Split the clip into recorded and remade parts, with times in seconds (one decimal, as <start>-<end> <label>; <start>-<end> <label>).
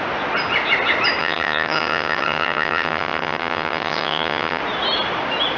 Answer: 0.0-1.2 recorded; 1.2-4.6 remade; 4.6-5.6 recorded